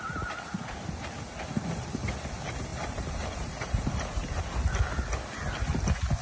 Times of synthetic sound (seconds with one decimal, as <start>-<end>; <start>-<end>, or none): 2.7-4.4